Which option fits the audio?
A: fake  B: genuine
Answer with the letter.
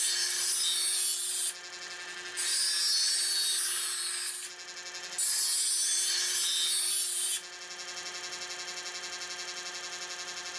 B